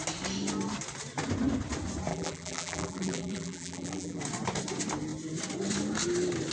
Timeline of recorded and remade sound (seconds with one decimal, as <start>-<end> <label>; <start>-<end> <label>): 0.0-2.1 recorded; 2.1-4.2 remade; 4.2-6.5 recorded